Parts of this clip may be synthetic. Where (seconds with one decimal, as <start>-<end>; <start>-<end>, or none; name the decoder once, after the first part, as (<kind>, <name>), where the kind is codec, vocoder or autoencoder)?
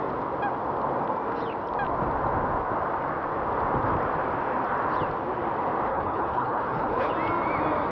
5.9-7.1 (codec, HILCodec)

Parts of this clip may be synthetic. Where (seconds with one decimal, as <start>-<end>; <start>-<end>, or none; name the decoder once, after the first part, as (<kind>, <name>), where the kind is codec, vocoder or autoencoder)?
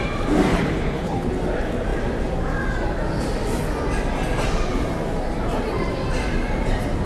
0.5-1.3 (codec, HILCodec)